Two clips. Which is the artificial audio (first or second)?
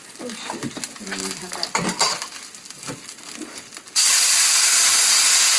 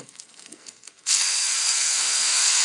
second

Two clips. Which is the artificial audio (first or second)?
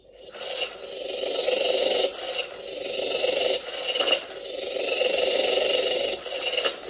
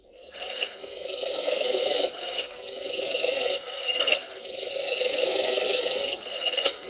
second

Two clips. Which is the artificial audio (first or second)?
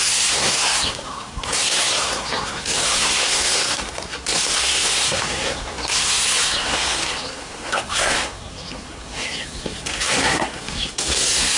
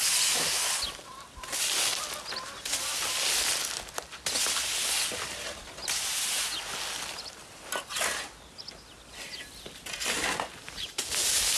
first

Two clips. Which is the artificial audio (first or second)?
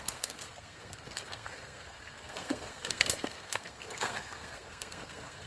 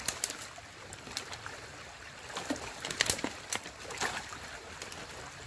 first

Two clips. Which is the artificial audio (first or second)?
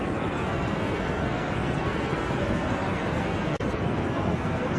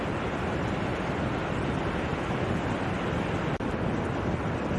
first